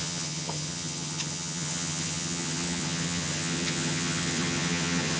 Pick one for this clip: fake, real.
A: fake